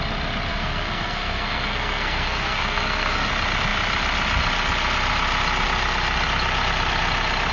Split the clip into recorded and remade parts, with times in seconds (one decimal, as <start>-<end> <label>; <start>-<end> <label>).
0.0-0.5 recorded; 0.5-3.3 remade; 3.3-7.5 recorded